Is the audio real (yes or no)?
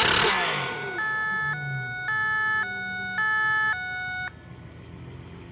yes